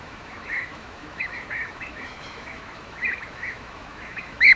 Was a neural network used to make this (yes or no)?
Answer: yes